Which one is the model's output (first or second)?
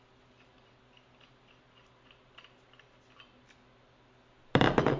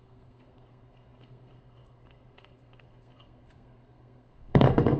second